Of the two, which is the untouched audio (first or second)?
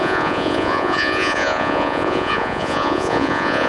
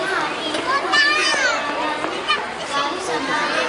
second